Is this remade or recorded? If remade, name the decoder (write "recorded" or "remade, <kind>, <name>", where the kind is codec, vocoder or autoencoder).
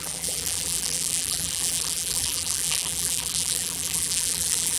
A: remade, vocoder, BigVGAN v2